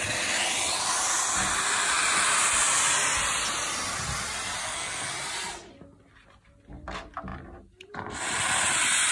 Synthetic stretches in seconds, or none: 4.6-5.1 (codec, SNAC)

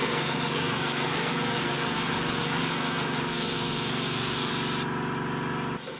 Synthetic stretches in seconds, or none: 0.0-4.5 (codec, SNAC)

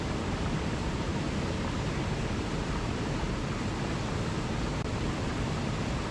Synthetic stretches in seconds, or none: none